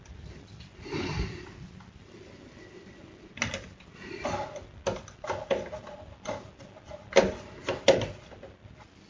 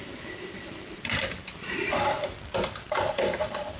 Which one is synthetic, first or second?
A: second